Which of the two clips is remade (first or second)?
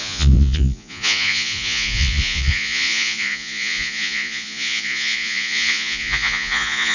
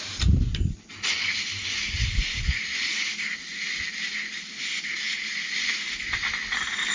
first